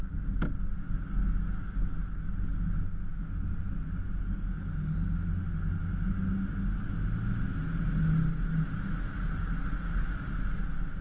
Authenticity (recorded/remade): recorded